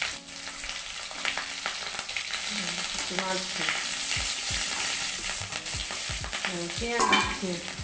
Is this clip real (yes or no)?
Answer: yes